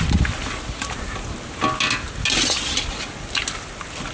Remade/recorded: recorded